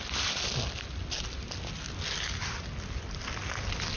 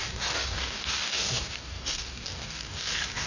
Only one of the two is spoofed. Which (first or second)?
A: second